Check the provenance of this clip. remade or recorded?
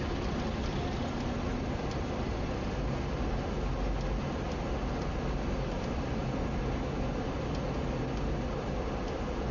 recorded